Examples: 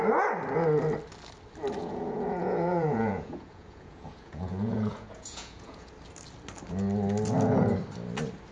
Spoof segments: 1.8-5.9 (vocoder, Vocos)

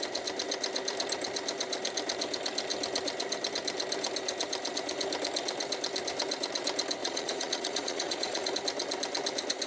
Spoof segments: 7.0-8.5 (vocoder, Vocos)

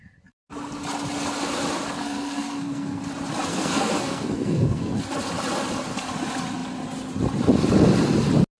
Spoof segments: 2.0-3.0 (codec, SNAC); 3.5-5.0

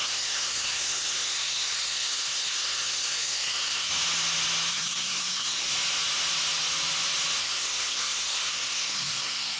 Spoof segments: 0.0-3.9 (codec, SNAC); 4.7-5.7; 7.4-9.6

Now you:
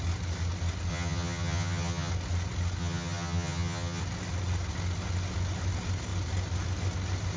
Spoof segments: 0.9-2.1 (vocoder, HiFi-GAN); 2.8-4.0

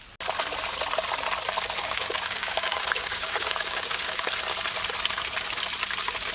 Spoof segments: 1.8-4.3 (codec, DAC)